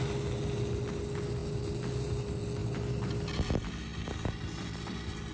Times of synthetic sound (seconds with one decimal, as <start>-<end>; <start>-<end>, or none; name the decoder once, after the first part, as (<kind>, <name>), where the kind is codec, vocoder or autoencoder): none